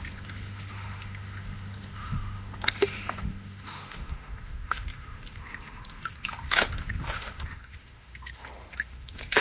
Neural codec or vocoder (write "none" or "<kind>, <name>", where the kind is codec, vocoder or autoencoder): autoencoder, DAC-VAE